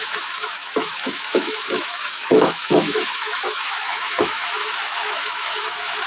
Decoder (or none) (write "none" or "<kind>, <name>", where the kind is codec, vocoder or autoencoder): autoencoder, DAC-VAE